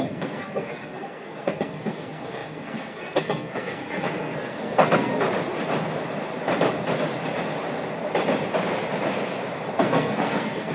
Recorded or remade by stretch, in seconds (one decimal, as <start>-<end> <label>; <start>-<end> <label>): 0.0-5.1 remade; 5.1-9.7 recorded; 9.7-10.7 remade

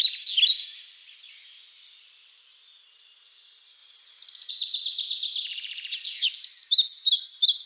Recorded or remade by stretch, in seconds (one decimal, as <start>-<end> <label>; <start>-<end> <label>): 0.0-7.7 recorded